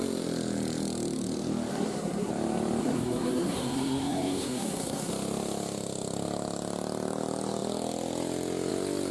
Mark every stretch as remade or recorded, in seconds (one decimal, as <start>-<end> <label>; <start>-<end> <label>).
0.0-1.7 recorded; 1.7-2.3 remade; 2.3-2.8 recorded; 2.8-5.1 remade; 5.1-9.1 recorded